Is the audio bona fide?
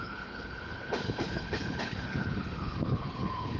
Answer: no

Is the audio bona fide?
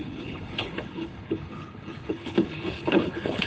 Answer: no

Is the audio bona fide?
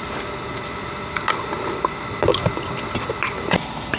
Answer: yes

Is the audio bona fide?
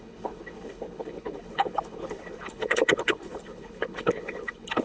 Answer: no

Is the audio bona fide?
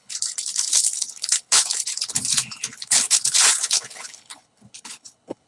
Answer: no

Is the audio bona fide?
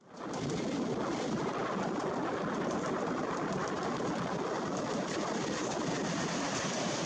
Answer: yes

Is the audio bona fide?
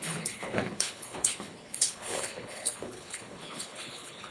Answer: no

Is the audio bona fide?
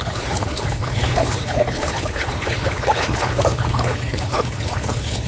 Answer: no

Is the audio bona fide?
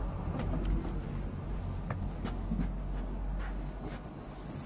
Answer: yes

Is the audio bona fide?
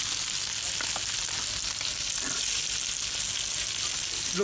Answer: yes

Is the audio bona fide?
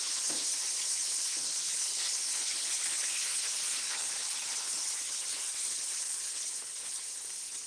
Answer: no